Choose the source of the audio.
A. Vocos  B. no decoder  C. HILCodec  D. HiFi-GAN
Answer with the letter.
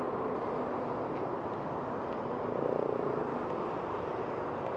B